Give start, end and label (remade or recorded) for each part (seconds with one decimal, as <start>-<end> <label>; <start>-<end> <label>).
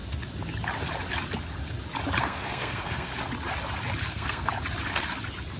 0.0-2.2 recorded; 2.2-3.1 remade; 3.1-4.1 recorded; 4.1-4.5 remade; 4.5-5.6 recorded